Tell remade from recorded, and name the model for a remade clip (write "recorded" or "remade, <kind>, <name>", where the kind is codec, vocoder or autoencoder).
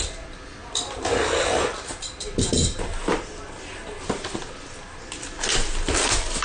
recorded